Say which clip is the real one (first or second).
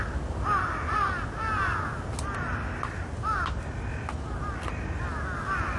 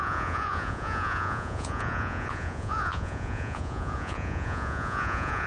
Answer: first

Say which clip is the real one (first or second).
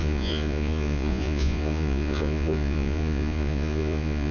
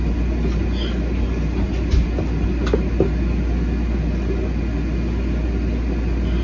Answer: second